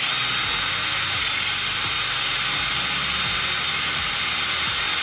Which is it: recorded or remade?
recorded